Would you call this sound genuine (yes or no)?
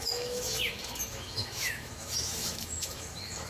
no